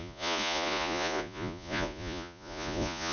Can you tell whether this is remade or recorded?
remade